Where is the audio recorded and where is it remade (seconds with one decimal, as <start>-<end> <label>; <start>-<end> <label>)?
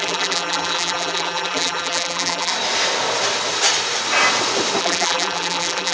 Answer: 0.0-2.5 remade; 2.5-4.8 recorded; 4.8-5.9 remade